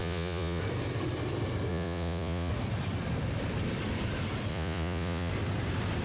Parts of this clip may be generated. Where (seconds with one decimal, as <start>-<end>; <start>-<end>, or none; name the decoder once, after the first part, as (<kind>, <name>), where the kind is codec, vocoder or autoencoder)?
0.0-0.6 (vocoder, Vocos); 1.7-2.5; 4.5-5.3